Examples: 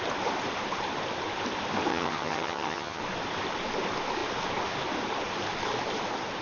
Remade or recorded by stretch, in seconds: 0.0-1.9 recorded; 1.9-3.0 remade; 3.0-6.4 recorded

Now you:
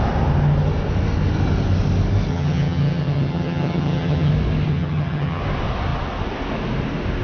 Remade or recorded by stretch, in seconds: 0.0-2.3 recorded; 2.3-4.3 remade; 4.3-4.7 recorded; 4.7-5.4 remade; 5.4-7.2 recorded

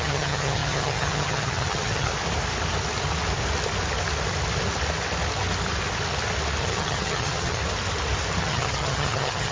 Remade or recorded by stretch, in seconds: 0.0-2.1 remade; 2.1-6.6 recorded; 6.6-7.6 remade; 7.6-8.4 recorded; 8.4-9.5 remade

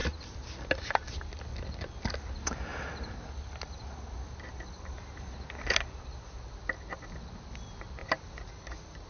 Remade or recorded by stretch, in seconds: 0.0-9.1 recorded

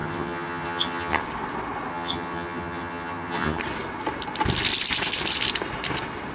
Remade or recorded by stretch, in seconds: 0.0-1.2 remade; 1.2-1.9 recorded; 1.9-3.6 remade; 3.6-6.3 recorded

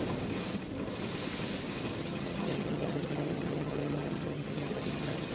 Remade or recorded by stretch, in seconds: 0.0-2.0 recorded; 2.0-5.3 remade

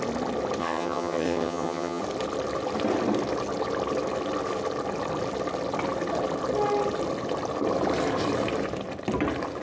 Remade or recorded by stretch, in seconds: 0.0-0.6 recorded; 0.6-2.0 remade; 2.0-9.6 recorded